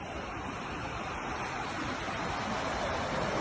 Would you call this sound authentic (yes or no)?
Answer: yes